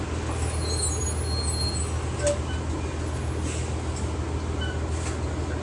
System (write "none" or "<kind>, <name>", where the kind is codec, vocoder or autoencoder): none